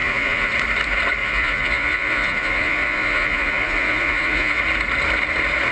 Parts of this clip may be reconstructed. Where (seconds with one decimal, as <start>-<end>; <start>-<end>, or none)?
0.0-0.5; 1.2-4.6